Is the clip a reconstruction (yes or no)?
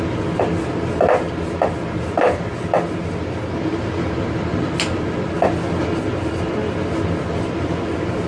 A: no